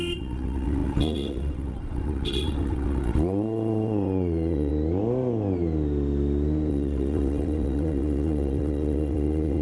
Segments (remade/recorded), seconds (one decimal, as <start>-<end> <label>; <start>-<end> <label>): 0.0-4.7 remade; 4.7-6.7 recorded; 6.7-9.6 remade